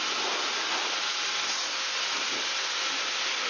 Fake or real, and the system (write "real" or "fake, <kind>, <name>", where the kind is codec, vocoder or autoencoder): real